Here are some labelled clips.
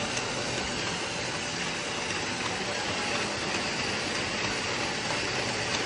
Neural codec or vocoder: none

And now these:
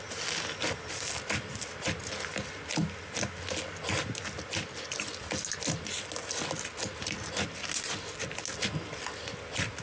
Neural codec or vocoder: none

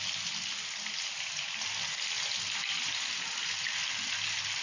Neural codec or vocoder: none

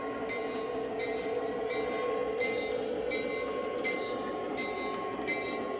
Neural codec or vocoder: none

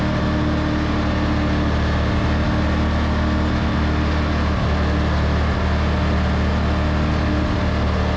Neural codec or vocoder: none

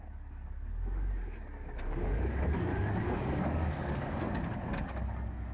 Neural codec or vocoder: codec, DAC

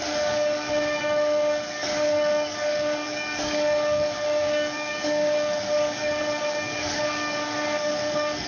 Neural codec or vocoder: codec, DAC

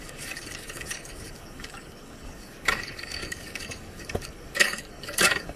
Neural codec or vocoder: codec, DAC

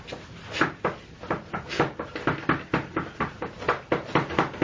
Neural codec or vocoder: none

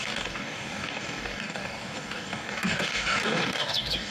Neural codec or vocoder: codec, DAC